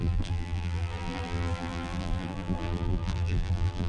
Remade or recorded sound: remade